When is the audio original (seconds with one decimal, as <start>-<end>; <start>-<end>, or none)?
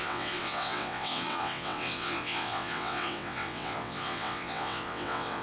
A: none